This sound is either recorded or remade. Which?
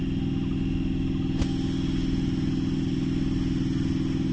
recorded